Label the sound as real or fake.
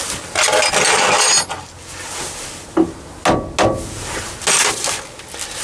real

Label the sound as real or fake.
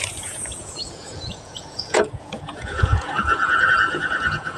fake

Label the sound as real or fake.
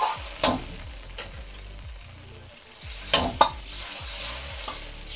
real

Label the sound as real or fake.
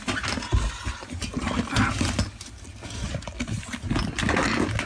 real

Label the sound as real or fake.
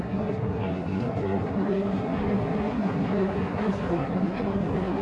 fake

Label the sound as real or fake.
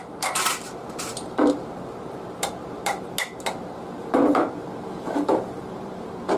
fake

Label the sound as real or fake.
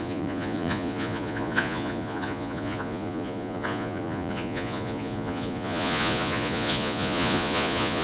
fake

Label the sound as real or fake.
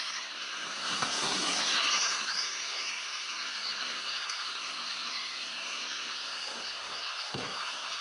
fake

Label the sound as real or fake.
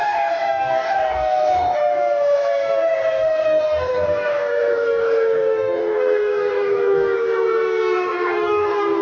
fake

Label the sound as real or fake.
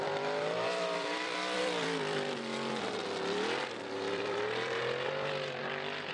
fake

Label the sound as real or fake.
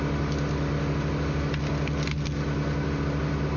real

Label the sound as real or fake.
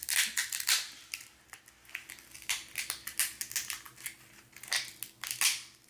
real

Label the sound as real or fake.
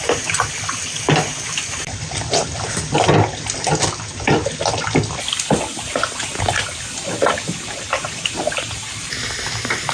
real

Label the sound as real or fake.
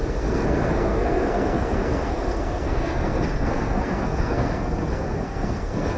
fake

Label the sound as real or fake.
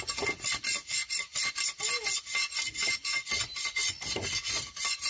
real